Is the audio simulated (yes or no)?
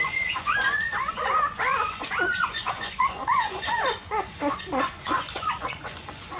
yes